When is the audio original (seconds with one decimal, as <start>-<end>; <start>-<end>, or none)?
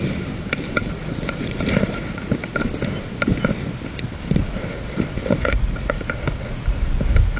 0.0-0.8; 2.3-5.2; 6.0-7.4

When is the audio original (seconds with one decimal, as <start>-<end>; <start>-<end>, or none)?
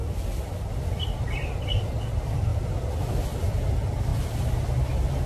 4.1-5.3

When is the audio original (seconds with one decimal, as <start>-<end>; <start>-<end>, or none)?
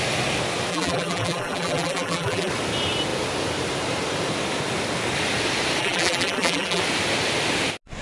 0.0-0.7; 2.5-5.8; 6.8-8.0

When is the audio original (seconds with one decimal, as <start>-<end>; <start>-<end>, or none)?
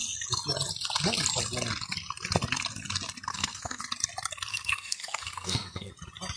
0.0-3.3; 3.8-4.5; 5.9-6.4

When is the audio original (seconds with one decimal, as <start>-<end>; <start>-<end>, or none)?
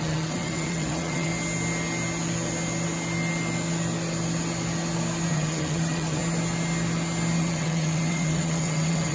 1.3-5.3; 6.2-7.4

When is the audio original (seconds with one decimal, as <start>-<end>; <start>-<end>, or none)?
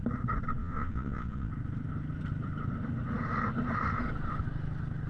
0.0-0.6; 1.5-5.1